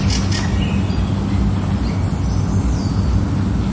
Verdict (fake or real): real